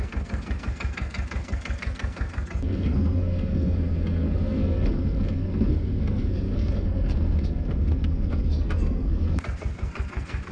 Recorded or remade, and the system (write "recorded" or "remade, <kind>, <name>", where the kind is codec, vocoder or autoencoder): remade, codec, SNAC